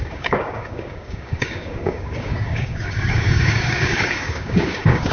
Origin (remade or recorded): remade